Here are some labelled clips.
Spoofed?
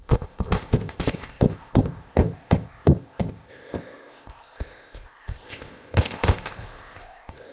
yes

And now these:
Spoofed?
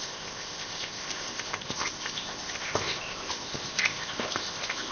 yes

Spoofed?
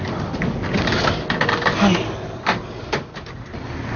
no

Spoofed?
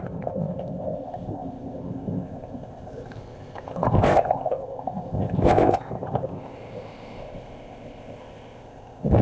yes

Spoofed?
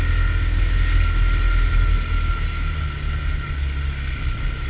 no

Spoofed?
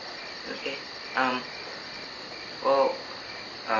no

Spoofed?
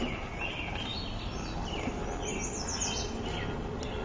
no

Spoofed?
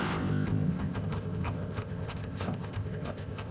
yes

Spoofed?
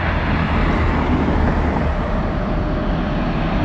no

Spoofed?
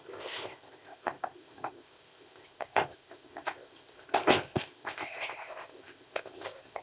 yes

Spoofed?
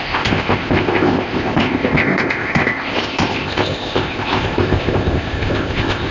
yes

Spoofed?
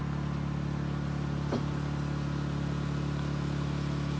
no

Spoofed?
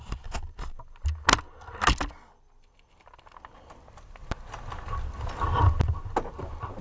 no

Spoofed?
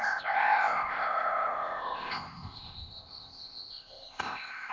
yes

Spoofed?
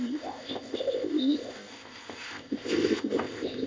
yes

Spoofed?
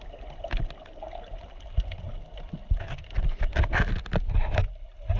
no